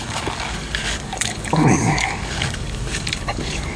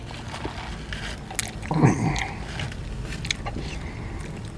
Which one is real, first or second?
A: second